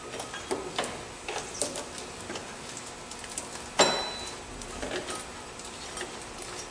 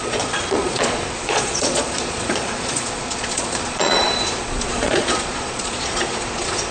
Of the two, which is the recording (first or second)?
first